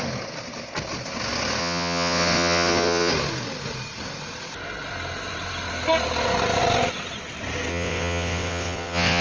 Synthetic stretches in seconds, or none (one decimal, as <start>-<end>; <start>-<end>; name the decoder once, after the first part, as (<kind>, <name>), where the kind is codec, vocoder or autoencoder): 1.6-3.1 (vocoder, WaveNeXt); 7.7-9.2